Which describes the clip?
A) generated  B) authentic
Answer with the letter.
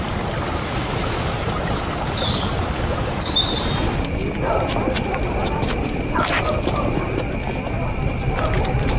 B